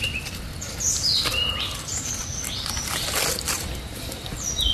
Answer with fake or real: real